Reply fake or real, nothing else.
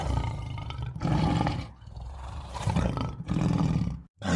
fake